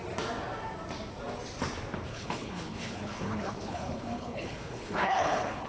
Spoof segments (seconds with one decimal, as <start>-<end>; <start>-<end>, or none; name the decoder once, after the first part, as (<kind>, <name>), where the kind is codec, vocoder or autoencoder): 2.1-5.7 (codec, HILCodec)